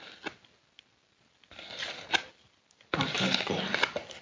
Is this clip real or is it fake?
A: real